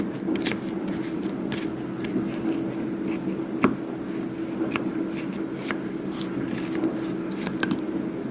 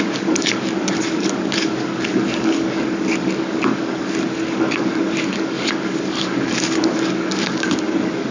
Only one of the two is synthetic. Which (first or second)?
second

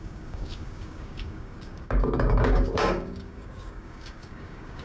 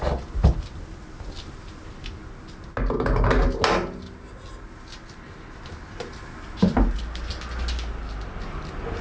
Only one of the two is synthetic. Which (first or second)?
first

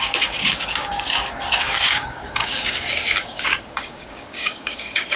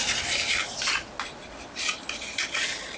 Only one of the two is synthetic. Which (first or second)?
first